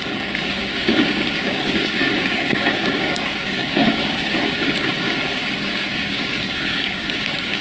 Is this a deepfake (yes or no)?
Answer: yes